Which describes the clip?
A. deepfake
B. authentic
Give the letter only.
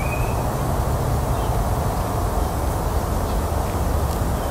B